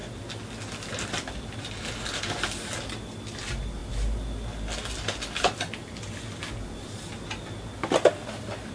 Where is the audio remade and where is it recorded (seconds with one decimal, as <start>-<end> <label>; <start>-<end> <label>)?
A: 0.0-8.7 recorded